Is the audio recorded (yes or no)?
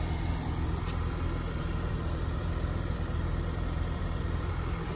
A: no